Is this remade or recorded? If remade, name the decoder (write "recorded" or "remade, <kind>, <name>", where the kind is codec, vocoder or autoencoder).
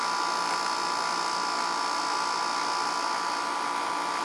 recorded